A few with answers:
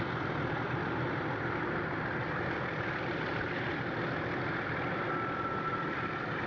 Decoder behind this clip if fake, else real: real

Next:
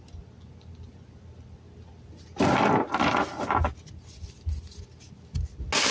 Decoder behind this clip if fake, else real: real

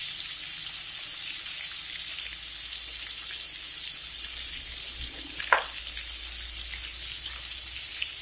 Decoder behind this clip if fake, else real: real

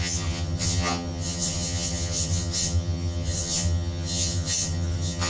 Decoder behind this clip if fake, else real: fake, vocoder, HiFi-GAN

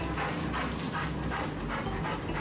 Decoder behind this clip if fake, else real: real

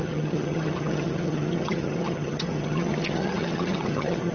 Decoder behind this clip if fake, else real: fake, vocoder, HiFi-GAN